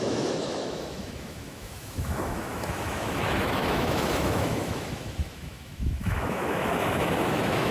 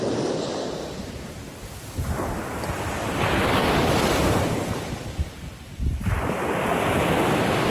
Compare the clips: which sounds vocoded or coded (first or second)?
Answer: first